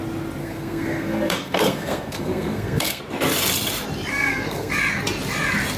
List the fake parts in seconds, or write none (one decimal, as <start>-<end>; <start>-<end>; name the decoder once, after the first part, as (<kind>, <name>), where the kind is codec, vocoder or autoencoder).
0.4-3.0 (codec, SNAC); 4.1-4.7